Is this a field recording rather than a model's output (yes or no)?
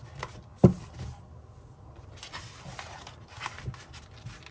yes